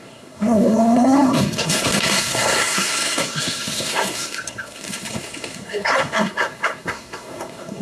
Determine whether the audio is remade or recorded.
remade